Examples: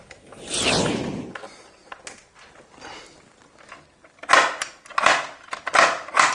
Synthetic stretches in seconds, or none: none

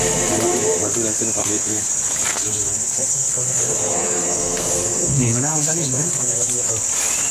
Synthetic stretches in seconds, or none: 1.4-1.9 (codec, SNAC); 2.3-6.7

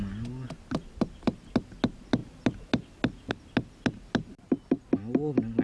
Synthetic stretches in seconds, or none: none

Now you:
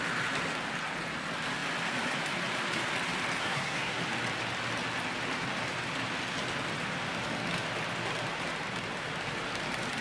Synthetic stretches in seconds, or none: 3.4-4.0 (codec, SNAC)

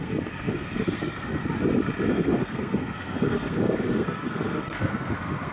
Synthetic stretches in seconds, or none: 0.0-1.4 (codec, SNAC); 2.1-5.5